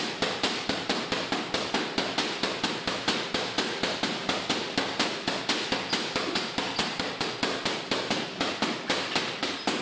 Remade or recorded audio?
recorded